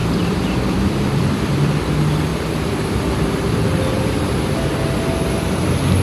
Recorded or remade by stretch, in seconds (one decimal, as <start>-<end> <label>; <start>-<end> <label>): 0.0-1.8 remade; 1.8-2.3 recorded; 2.3-3.8 remade; 3.8-6.0 recorded